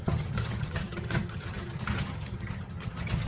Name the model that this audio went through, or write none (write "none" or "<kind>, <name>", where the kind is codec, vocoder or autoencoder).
vocoder, HiFi-GAN